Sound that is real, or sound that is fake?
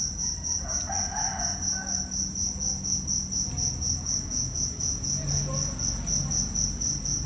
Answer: real